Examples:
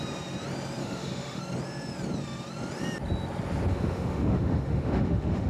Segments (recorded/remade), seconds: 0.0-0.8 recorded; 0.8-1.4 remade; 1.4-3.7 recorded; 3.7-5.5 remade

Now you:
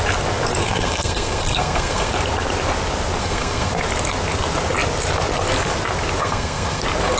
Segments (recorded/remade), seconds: 0.0-0.6 recorded; 0.6-2.1 remade; 2.1-3.2 recorded; 3.2-3.7 remade; 3.7-6.2 recorded; 6.2-6.8 remade; 6.8-7.2 recorded